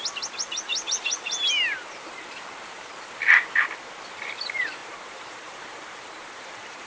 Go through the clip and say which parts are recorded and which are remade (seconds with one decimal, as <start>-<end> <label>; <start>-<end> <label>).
0.0-4.8 recorded; 4.8-6.9 remade